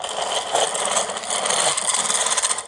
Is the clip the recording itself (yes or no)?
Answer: yes